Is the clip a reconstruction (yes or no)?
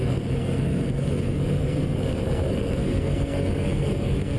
yes